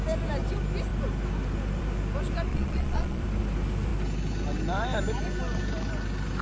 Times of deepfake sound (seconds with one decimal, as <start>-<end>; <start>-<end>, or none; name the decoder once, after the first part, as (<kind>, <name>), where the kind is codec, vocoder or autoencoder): 2.5-3.2 (vocoder, Vocos)